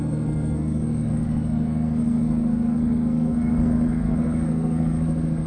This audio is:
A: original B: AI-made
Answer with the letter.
B